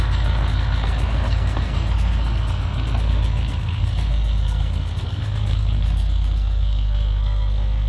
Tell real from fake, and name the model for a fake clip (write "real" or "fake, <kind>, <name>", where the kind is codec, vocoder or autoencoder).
fake, codec, SNAC